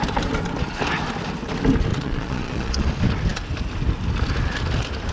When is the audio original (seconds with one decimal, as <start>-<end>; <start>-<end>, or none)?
0.0-1.9; 2.9-5.1